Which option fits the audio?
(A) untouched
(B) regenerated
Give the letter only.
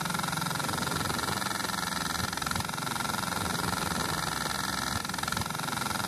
A